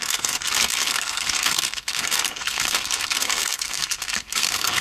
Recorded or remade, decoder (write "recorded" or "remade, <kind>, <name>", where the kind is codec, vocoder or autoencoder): remade, codec, SNAC